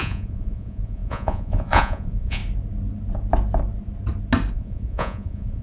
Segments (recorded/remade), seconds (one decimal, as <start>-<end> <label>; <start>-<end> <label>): 0.0-2.4 remade; 2.4-4.5 recorded; 4.5-5.6 remade